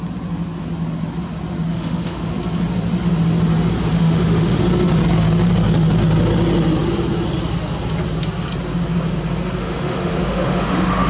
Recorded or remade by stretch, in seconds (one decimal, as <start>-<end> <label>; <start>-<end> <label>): 0.0-1.7 recorded; 1.7-2.3 remade; 2.3-3.9 recorded; 3.9-4.6 remade; 4.6-9.6 recorded; 9.6-11.1 remade